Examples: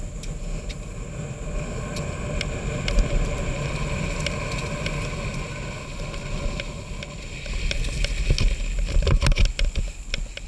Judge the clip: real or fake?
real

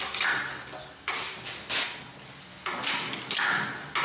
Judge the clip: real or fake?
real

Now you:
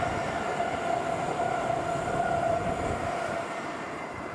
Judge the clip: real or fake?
fake